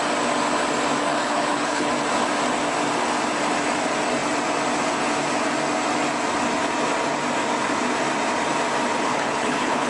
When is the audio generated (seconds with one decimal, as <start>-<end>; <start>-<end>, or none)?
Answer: 1.1-1.9; 9.1-9.9